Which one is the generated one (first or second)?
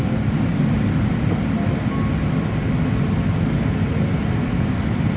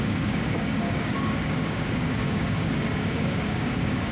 second